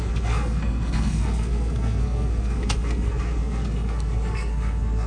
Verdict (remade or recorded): remade